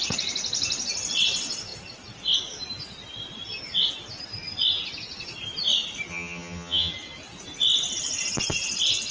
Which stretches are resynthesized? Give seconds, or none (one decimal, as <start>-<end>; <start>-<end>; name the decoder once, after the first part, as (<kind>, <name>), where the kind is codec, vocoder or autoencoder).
6.1-6.9 (vocoder, HiFi-GAN)